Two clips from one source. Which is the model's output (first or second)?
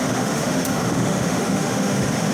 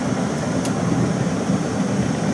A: first